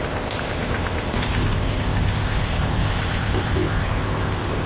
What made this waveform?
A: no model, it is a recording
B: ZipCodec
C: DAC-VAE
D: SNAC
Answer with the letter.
B